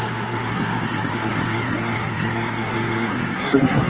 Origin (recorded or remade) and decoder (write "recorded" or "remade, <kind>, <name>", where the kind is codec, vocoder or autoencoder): remade, codec, SNAC